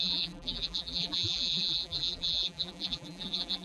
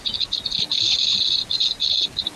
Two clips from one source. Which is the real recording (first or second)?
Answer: second